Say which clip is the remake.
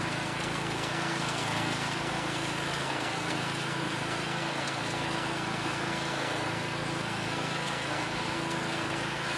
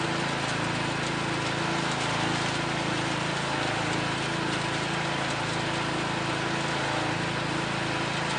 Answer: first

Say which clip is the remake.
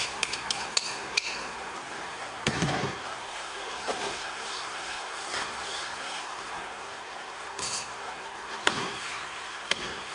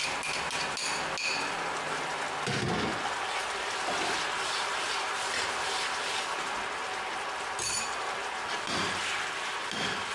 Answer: first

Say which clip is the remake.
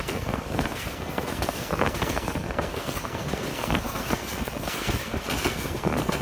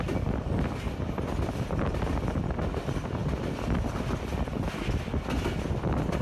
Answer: first